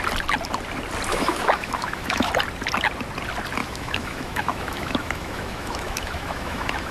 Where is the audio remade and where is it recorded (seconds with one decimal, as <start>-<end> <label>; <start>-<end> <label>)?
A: 0.0-1.1 recorded; 1.1-2.3 remade; 2.3-3.6 recorded; 3.6-6.9 remade